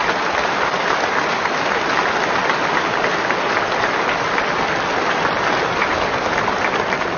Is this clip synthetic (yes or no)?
no